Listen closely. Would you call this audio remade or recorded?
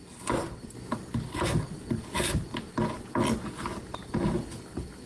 recorded